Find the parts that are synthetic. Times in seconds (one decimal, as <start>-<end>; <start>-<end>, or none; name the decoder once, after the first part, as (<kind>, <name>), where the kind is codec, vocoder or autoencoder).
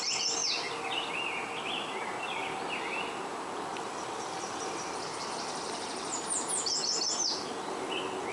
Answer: 0.4-1.1 (vocoder, BigVGAN v2); 3.7-5.9